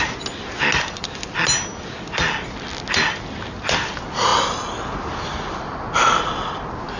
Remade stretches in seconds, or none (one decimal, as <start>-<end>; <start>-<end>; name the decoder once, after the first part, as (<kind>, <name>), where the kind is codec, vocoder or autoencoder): none